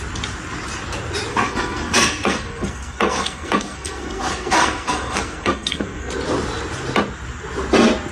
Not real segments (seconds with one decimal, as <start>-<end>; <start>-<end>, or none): 1.3-6.1